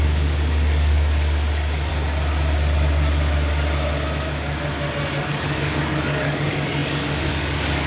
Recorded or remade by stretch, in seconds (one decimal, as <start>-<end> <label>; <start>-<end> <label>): 0.0-1.9 remade; 1.9-5.2 recorded; 5.2-7.9 remade